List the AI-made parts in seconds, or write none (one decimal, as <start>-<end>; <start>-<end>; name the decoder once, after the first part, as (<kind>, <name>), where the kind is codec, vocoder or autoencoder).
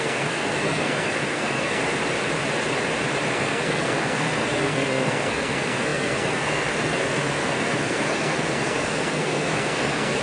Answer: 0.0-1.8 (codec, SNAC); 3.3-10.2